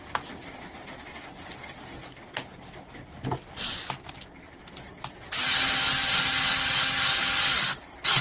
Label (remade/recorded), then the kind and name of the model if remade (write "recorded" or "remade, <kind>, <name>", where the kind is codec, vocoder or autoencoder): recorded